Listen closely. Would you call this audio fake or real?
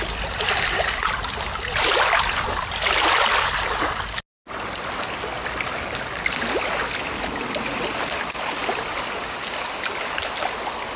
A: real